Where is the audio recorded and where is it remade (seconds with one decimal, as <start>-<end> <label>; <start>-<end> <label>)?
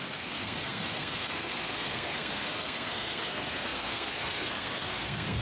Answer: 0.0-5.4 remade